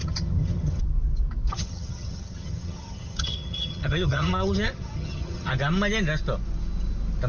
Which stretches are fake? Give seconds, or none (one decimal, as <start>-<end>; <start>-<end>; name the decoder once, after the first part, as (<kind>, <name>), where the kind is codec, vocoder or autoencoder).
0.0-0.8 (vocoder, HiFi-GAN); 1.5-5.5

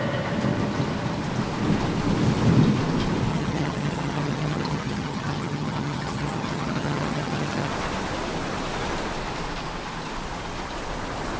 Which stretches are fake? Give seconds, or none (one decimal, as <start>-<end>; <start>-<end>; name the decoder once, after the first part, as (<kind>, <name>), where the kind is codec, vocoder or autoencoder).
3.3-7.7 (vocoder, HiFi-GAN)

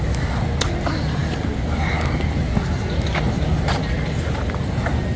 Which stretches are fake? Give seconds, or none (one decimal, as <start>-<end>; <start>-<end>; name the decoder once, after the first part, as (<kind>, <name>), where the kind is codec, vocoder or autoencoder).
none

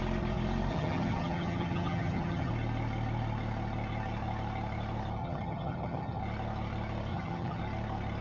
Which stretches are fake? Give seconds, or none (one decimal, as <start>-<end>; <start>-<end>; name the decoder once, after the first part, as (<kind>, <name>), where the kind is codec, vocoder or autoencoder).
0.7-2.5 (vocoder, HiFi-GAN); 5.2-6.2; 7.1-7.6

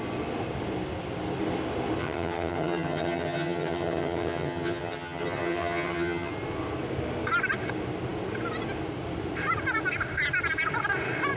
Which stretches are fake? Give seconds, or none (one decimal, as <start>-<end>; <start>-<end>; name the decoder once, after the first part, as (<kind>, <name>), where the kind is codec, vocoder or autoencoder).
2.0-6.3 (vocoder, HiFi-GAN)

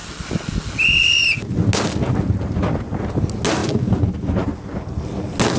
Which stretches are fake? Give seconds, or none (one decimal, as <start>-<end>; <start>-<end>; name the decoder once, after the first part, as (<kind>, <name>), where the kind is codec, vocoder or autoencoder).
none